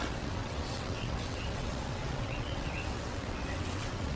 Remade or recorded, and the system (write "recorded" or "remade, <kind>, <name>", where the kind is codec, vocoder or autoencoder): remade, vocoder, WaveNeXt